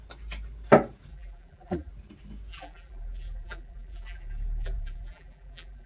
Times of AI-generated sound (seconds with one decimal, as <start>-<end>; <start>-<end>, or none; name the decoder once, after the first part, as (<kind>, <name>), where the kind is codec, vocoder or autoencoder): 1.1-1.9 (vocoder, BigVGAN v2); 2.5-5.9